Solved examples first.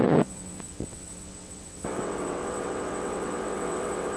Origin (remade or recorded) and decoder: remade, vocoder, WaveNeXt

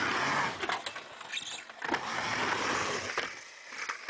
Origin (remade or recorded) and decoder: recorded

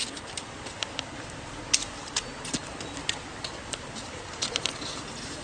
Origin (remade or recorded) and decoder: recorded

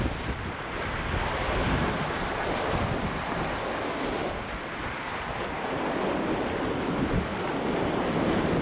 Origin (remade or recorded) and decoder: recorded